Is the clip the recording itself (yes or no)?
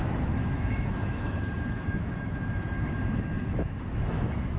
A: no